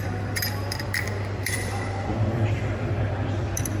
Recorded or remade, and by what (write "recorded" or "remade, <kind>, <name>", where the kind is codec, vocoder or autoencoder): remade, vocoder, BigVGAN v2